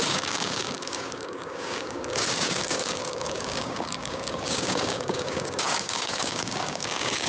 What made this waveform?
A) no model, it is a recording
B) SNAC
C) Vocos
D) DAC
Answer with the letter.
D